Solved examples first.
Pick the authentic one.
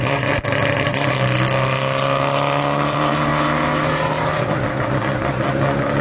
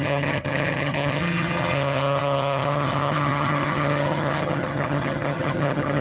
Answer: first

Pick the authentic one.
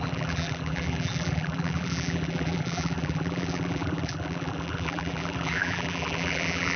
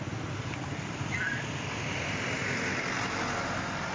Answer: second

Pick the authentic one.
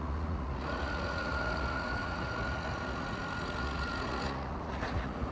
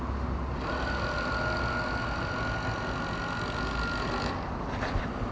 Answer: second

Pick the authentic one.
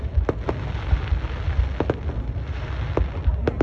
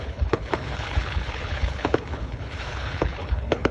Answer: first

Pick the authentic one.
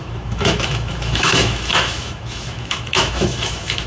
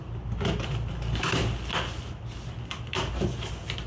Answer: second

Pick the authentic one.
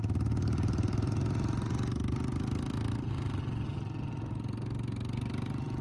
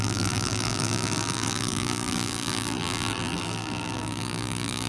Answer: first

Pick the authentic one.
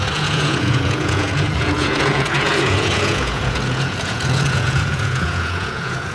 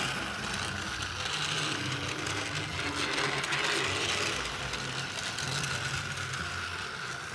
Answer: second